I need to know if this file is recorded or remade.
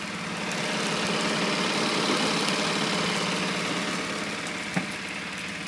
recorded